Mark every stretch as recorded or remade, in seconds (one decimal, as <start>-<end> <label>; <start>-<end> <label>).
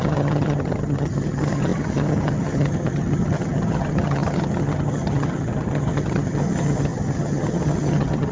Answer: 0.0-8.3 remade